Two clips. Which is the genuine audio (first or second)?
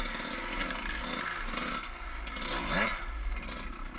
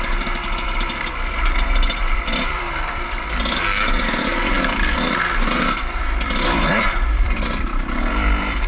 first